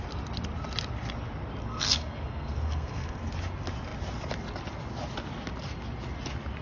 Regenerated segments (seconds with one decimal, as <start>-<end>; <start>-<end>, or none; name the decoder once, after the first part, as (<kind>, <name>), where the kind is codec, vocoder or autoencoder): 1.6-3.2 (codec, SNAC)